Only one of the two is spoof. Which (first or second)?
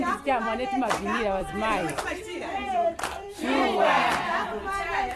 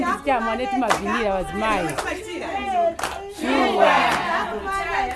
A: first